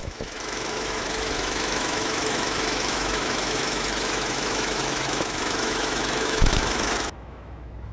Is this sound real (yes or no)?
no